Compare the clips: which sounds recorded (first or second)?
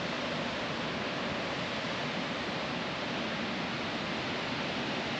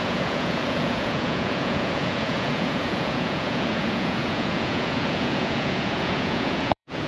first